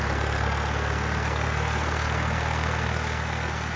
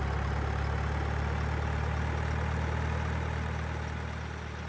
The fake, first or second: first